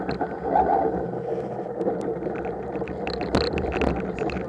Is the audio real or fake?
fake